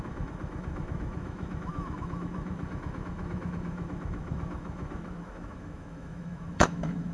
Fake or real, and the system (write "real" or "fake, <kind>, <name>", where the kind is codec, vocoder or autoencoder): fake, autoencoder, DAC-VAE